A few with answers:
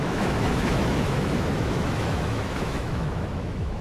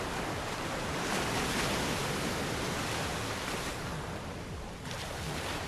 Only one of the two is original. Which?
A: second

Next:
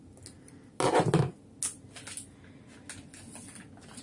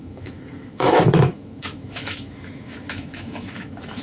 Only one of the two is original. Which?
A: first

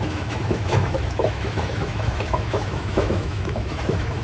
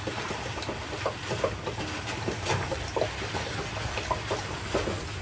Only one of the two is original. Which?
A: second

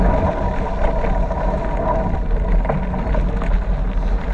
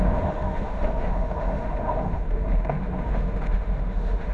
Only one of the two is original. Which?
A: first